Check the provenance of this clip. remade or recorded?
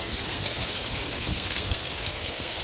remade